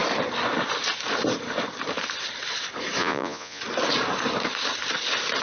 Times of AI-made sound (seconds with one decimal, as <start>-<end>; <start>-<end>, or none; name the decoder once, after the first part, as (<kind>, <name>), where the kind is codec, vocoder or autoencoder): 3.0-3.6 (vocoder, Vocos)